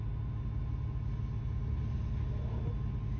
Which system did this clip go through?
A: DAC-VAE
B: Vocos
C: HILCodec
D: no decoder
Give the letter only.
D